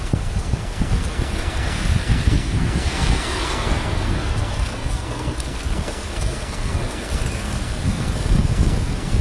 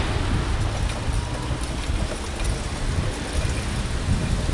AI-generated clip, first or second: first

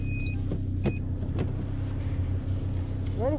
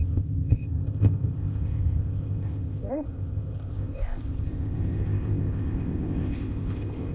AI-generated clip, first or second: second